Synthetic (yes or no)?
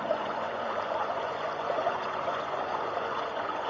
yes